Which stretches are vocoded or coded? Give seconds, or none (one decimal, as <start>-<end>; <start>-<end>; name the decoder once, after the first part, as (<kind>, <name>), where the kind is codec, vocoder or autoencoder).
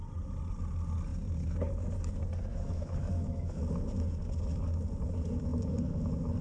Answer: 2.5-3.6 (autoencoder, DAC-VAE)